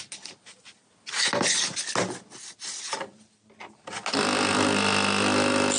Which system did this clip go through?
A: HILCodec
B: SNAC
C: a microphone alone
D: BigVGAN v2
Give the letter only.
C